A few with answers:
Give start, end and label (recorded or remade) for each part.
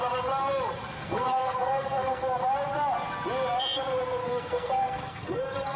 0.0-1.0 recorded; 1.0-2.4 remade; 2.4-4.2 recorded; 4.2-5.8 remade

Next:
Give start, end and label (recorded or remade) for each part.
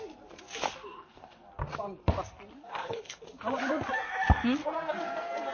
0.0-0.8 recorded; 0.8-1.5 remade; 1.5-2.6 recorded; 2.6-3.2 remade; 3.2-4.6 recorded; 4.6-5.5 remade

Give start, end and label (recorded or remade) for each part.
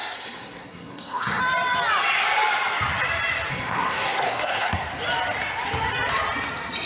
0.0-1.4 remade; 1.4-3.5 recorded; 3.5-4.9 remade; 4.9-6.9 recorded